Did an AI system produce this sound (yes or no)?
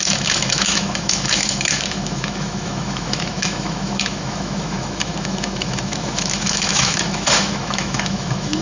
yes